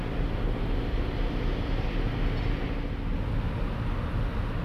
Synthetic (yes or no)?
no